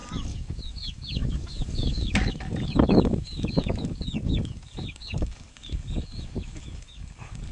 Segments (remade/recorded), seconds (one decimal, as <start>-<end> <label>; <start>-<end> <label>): 0.0-7.5 remade